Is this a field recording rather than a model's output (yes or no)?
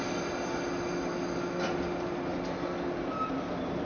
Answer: yes